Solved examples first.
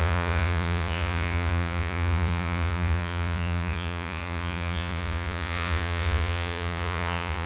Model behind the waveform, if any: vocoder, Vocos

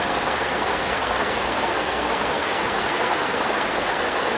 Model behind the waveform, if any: codec, SNAC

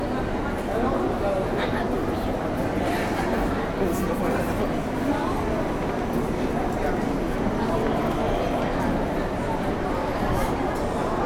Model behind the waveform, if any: none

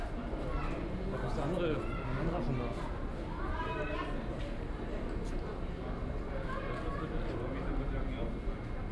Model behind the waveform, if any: none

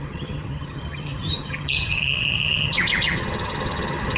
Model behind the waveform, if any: vocoder, HiFi-GAN